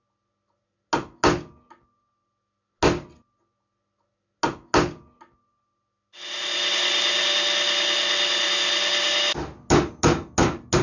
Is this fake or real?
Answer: real